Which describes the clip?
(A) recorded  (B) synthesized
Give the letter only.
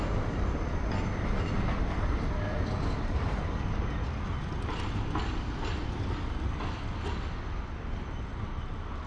A